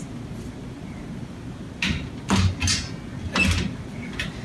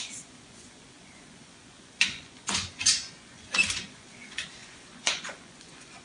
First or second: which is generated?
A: second